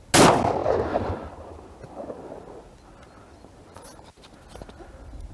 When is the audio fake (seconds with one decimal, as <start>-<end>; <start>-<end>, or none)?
none